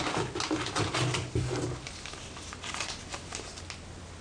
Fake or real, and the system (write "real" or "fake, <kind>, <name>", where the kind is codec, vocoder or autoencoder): real